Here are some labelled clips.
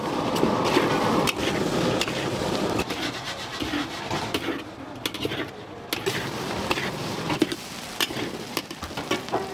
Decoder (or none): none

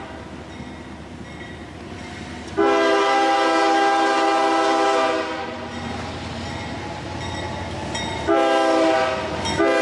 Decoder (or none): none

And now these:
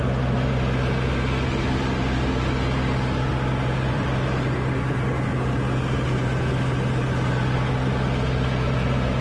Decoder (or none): vocoder, BigVGAN v2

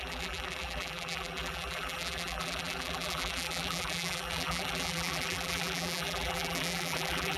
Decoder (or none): vocoder, BigVGAN v2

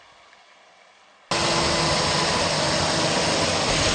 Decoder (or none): none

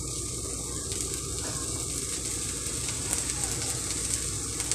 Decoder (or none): none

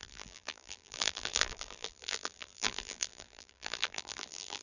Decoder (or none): vocoder, BigVGAN v2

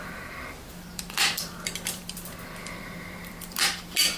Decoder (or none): vocoder, BigVGAN v2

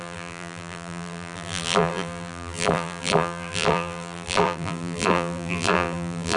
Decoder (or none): vocoder, BigVGAN v2